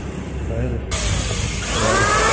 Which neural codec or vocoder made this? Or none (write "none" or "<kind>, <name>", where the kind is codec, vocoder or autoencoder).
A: vocoder, BigVGAN v2